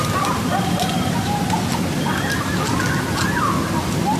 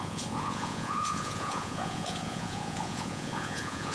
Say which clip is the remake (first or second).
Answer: second